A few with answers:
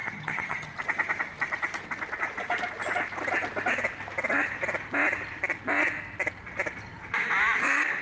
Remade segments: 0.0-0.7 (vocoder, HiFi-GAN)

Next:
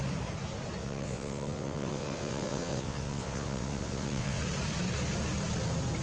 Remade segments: 0.8-4.4 (vocoder, WaveNeXt)

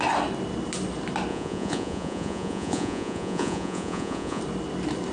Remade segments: 1.3-4.4 (vocoder, Vocos)

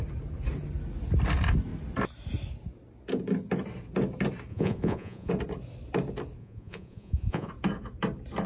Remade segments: 4.5-5.3 (vocoder, Vocos); 6.4-7.5

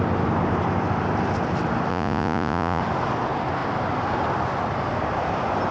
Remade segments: 1.9-2.8 (vocoder, Vocos)